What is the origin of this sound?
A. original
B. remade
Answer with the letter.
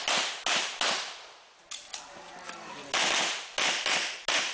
A